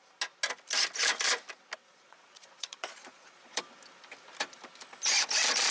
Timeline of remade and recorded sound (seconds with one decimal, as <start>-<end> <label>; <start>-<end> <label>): 0.0-1.8 recorded; 1.8-3.6 remade; 3.6-5.7 recorded